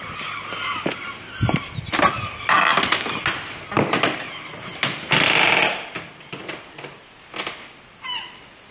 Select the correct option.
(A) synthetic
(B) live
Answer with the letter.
B